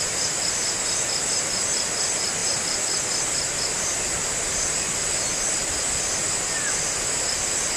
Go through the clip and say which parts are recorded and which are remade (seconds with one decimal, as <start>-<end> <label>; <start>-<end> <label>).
0.0-7.8 recorded